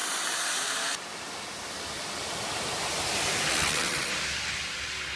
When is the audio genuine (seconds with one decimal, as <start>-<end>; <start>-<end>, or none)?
0.0-3.5; 4.1-5.2